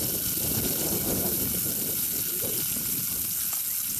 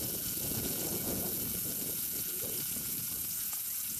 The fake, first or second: second